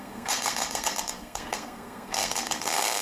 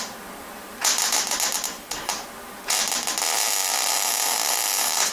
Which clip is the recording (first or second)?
second